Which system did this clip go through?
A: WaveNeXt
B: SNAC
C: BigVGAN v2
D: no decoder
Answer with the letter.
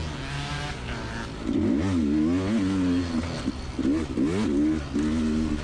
D